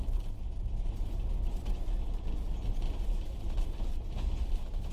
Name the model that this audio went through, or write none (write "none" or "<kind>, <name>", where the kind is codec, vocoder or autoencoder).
none